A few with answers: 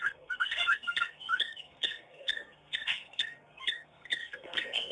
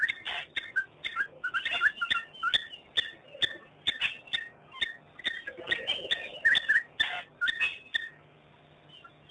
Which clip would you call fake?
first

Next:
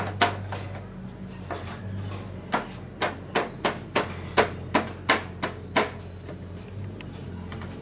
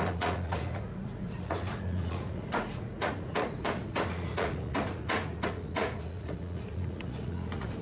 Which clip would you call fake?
second